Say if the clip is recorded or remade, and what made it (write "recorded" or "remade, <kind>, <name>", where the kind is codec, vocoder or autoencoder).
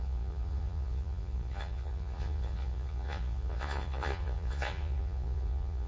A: remade, vocoder, Vocos